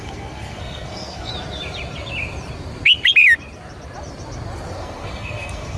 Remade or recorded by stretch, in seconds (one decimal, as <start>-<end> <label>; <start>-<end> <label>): 0.0-1.3 remade; 1.3-4.8 recorded; 4.8-5.8 remade